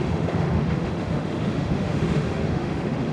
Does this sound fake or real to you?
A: fake